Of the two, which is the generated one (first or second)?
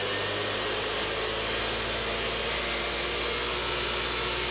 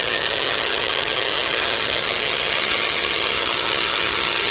second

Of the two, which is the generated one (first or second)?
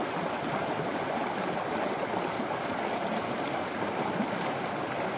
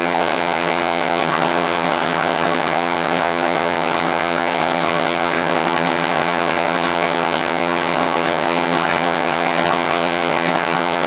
second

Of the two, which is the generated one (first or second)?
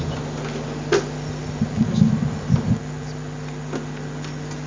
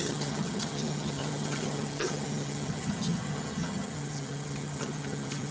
second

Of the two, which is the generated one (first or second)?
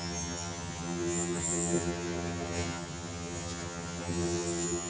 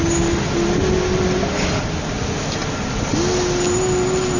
first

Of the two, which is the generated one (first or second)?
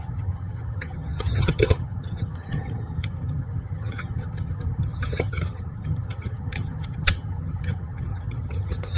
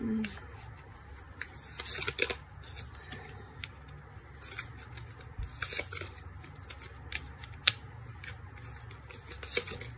first